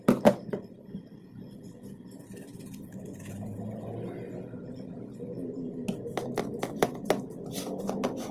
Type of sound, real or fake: real